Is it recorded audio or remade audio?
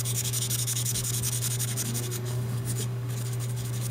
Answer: remade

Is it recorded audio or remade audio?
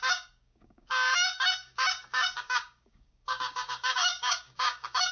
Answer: remade